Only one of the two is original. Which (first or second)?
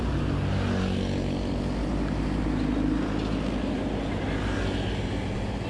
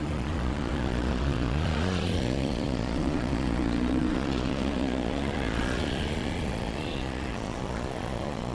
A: first